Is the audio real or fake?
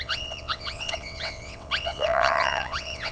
fake